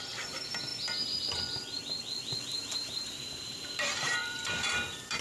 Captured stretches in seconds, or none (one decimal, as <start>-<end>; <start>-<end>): 0.0-2.5